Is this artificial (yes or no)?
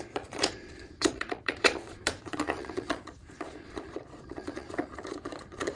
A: yes